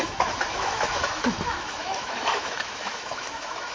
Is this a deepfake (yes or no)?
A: yes